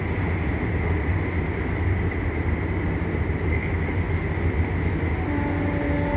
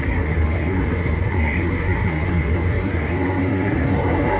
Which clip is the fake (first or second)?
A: second